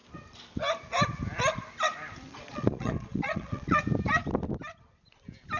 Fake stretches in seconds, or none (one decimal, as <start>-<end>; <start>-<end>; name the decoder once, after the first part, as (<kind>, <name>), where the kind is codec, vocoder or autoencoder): 2.3-3.8 (vocoder, Vocos)